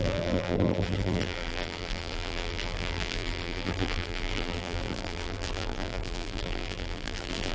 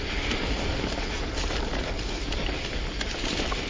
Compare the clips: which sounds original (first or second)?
second